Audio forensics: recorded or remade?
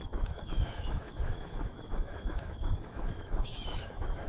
remade